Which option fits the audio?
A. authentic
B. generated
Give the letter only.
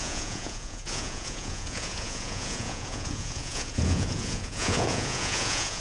B